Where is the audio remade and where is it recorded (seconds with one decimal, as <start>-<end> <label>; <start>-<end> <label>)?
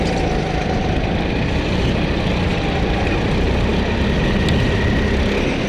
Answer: 0.0-5.7 recorded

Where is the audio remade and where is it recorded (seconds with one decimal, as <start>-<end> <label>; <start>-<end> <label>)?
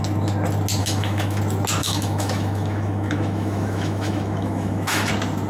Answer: 0.0-0.8 recorded; 0.8-1.4 remade; 1.4-1.8 recorded; 1.8-5.1 remade; 5.1-5.5 recorded